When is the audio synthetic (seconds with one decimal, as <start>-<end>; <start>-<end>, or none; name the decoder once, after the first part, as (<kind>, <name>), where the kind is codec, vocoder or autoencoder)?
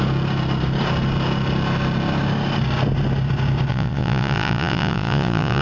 3.7-5.6 (vocoder, Vocos)